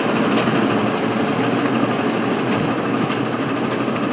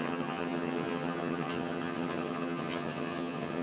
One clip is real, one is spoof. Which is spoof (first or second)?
second